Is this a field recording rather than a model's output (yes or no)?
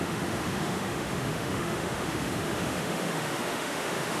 no